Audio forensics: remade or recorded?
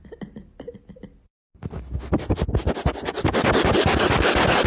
recorded